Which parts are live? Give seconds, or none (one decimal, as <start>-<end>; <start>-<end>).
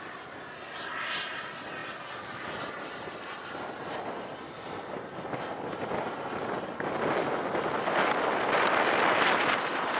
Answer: 0.0-10.0